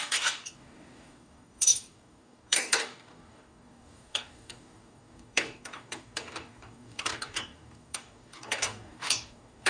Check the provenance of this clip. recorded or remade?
remade